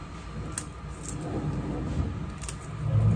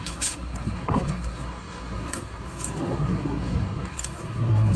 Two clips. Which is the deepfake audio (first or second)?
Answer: second